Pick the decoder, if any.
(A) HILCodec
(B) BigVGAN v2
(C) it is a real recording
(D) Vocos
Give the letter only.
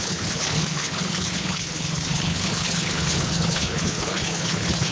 A